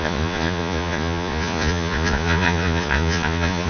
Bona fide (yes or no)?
no